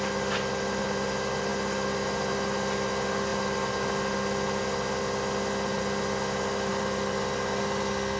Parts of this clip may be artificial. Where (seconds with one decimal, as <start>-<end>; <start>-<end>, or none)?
6.7-7.6